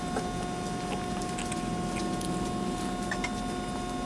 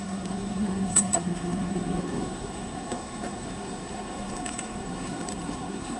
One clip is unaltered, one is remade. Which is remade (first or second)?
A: second